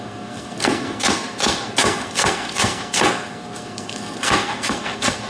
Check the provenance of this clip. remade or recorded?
remade